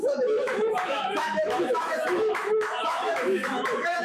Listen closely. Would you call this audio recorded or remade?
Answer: remade